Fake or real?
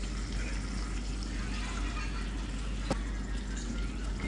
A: real